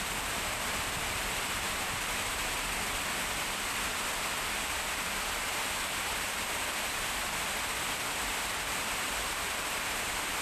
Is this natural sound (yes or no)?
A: no